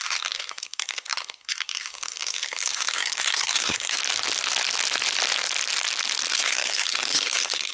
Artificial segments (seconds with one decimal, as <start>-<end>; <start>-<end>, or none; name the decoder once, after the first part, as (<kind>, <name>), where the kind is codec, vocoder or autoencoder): 0.0-4.0 (codec, SNAC); 6.3-7.7